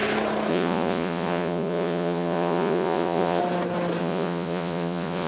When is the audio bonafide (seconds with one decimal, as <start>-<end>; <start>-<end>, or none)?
0.0-0.5; 3.4-4.0